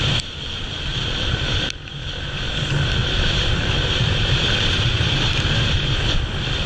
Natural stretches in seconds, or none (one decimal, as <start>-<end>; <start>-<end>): 0.0-0.9; 1.5-3.0; 6.0-6.7